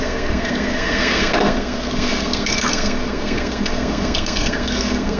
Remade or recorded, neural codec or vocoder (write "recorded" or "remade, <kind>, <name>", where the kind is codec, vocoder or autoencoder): remade, codec, SNAC